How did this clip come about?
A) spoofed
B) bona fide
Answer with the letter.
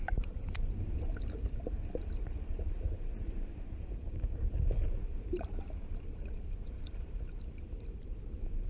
A